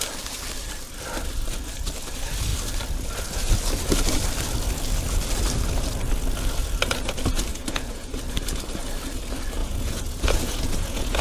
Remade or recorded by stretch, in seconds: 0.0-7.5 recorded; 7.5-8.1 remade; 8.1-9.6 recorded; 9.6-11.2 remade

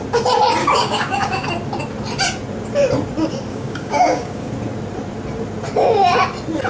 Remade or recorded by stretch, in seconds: 0.0-0.6 recorded; 0.6-1.5 remade; 1.5-3.5 recorded; 3.5-4.5 remade; 4.5-6.7 recorded

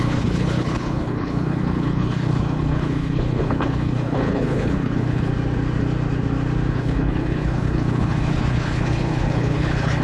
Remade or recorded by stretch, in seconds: 0.0-5.3 remade; 5.3-6.7 recorded; 6.7-10.0 remade

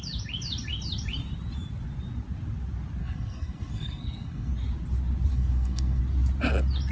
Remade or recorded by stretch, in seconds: 0.0-3.0 recorded; 3.0-4.5 remade; 4.5-5.3 recorded; 5.3-6.0 remade; 6.0-6.9 recorded

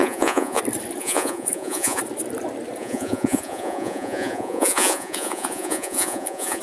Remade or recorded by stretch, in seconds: 0.0-0.6 remade; 0.6-1.0 recorded; 1.0-2.0 remade; 2.0-2.8 recorded; 2.8-6.6 remade

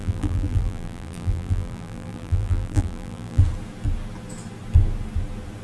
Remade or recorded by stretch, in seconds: 0.0-3.4 remade; 3.4-5.6 recorded

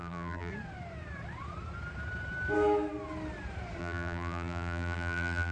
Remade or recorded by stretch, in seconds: 0.0-0.5 remade; 0.5-3.8 recorded; 3.8-5.5 remade

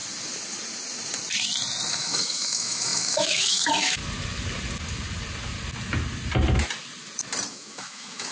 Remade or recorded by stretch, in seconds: 0.0-1.9 recorded; 1.9-4.0 remade; 4.0-7.5 recorded; 7.5-8.3 remade